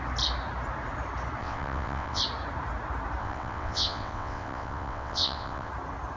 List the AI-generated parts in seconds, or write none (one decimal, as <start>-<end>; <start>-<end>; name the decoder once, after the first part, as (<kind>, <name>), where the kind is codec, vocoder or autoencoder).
1.4-2.2 (vocoder, WaveNeXt); 3.2-5.7